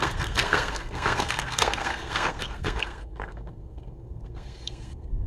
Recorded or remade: remade